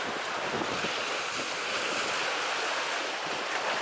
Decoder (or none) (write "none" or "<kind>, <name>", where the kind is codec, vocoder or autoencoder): none